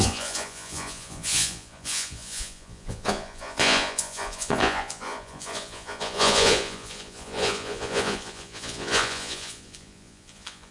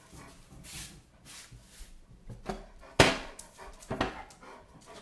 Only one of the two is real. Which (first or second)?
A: second